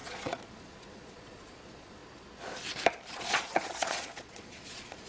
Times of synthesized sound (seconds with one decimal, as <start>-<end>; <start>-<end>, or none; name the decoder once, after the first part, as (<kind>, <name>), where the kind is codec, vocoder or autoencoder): 0.0-2.0 (vocoder, Vocos); 3.1-5.1